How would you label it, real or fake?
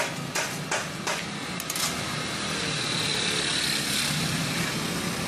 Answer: real